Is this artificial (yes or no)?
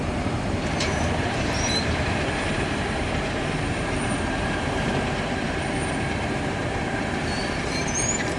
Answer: yes